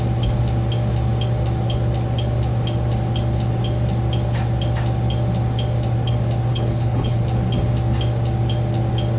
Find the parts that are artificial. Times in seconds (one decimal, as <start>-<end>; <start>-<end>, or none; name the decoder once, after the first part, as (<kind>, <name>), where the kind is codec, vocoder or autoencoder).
6.5-7.2 (codec, HILCodec)